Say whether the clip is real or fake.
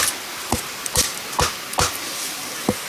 real